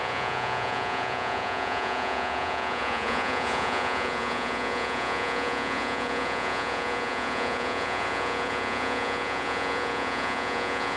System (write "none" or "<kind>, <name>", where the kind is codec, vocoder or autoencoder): vocoder, Vocos